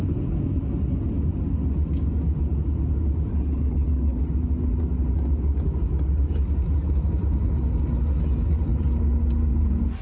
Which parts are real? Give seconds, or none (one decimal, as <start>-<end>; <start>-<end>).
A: 0.0-3.3; 4.2-10.0